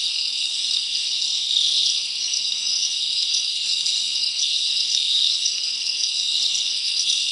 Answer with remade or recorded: remade